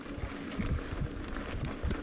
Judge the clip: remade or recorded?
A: remade